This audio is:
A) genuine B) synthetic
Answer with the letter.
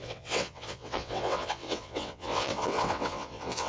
B